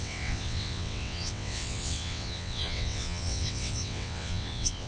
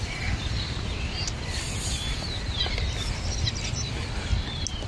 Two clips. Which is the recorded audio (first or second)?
second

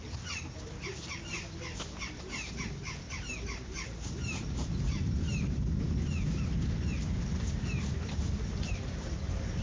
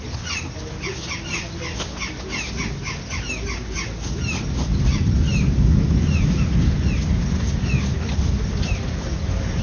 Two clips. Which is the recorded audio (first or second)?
second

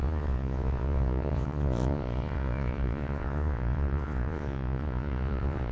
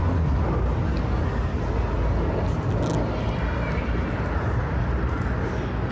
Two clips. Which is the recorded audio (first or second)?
second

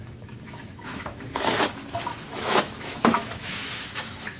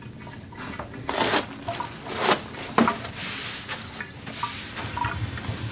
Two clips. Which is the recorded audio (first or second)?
second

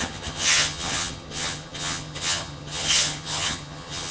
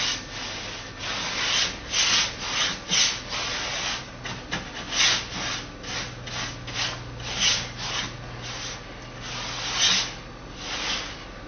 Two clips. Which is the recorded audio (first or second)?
second